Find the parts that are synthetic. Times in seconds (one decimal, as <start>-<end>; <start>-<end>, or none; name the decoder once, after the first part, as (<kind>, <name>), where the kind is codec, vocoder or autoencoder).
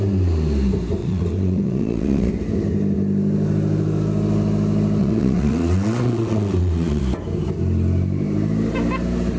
1.0-2.3 (vocoder, WaveNeXt); 5.0-7.0